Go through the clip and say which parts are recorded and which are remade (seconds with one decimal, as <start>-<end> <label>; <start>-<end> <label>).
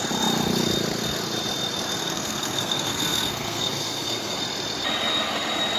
0.0-2.0 recorded; 2.0-4.4 remade; 4.4-5.8 recorded